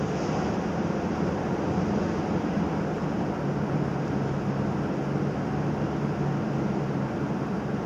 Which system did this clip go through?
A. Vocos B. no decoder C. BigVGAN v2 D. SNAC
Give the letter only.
B